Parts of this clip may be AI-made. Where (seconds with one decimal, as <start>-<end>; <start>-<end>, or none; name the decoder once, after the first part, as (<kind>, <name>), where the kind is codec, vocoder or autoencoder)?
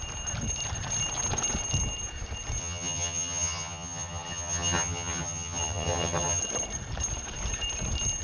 2.6-6.4 (vocoder, HiFi-GAN)